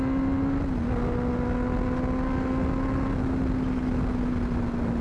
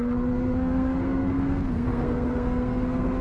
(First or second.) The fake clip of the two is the second